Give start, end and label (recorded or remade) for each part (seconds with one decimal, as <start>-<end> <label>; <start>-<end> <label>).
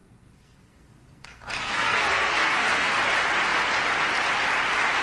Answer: 0.0-3.0 remade; 3.0-5.0 recorded